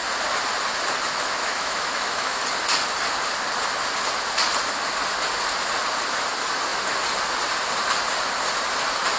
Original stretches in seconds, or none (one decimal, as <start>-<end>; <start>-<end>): 0.0-1.4; 2.4-9.2